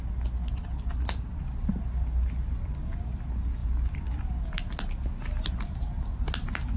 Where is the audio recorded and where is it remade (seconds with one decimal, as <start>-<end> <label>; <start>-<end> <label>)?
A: 0.0-3.6 recorded; 3.6-4.3 remade; 4.3-6.8 recorded